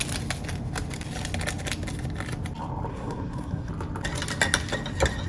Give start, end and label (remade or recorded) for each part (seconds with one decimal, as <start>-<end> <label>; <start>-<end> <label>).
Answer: 0.0-2.9 recorded; 2.9-3.7 remade; 3.7-5.3 recorded